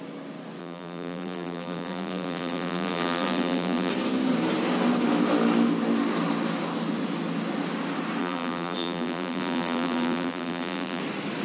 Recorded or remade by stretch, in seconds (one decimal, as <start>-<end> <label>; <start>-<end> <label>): 0.0-0.6 recorded; 0.6-3.9 remade; 3.9-8.2 recorded; 8.2-11.0 remade; 11.0-11.4 recorded